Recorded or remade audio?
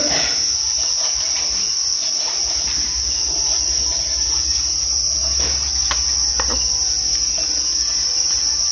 recorded